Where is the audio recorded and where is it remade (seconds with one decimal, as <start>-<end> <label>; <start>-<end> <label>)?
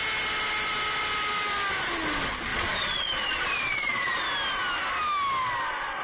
0.0-2.5 recorded; 2.5-4.2 remade; 4.2-6.0 recorded